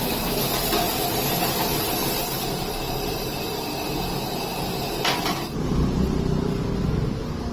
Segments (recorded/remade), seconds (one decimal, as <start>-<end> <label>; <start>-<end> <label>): 0.0-1.7 recorded; 1.7-3.6 remade; 3.6-7.5 recorded